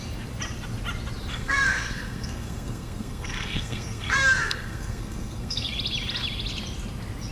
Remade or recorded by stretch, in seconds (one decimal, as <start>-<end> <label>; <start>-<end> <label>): 0.0-1.3 recorded; 1.3-5.7 remade; 5.7-7.3 recorded